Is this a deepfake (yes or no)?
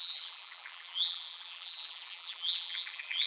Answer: yes